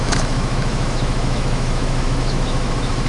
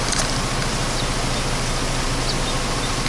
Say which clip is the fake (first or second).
first